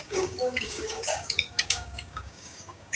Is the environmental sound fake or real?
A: fake